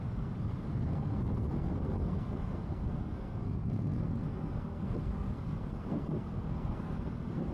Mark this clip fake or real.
fake